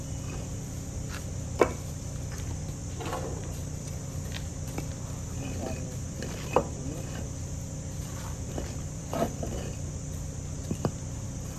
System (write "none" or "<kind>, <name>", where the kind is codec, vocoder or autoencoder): vocoder, BigVGAN v2